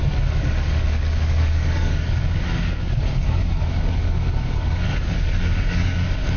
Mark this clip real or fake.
fake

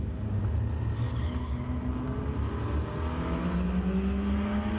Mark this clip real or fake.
real